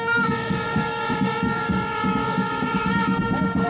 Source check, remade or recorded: remade